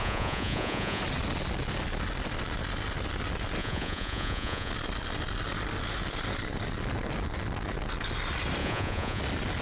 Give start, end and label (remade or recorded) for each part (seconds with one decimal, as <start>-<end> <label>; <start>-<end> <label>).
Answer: 0.0-1.0 remade; 1.0-3.6 recorded; 3.6-4.7 remade; 4.7-8.6 recorded; 8.6-9.2 remade; 9.2-9.6 recorded